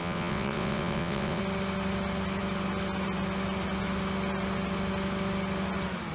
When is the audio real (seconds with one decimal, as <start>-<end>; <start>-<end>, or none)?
1.4-6.1